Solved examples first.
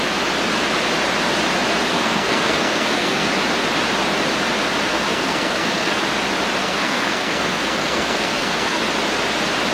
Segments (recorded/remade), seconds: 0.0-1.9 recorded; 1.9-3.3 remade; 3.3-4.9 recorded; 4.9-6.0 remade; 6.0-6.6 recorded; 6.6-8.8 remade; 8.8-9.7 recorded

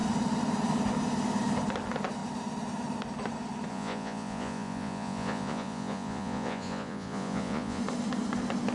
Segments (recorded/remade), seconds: 0.0-3.7 recorded; 3.7-7.8 remade; 7.8-8.7 recorded

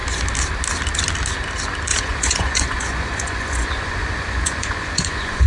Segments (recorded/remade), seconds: 0.0-1.9 recorded; 1.9-5.5 remade

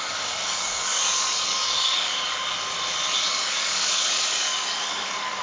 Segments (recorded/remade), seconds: 0.0-2.5 remade; 2.5-3.3 recorded; 3.3-5.4 remade

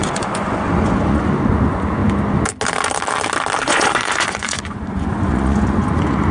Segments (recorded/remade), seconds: 0.0-2.0 remade; 2.0-3.6 recorded; 3.6-6.3 remade

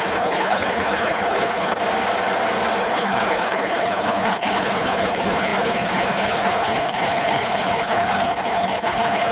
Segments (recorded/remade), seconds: 0.0-1.8 remade; 1.8-2.8 recorded; 2.8-9.3 remade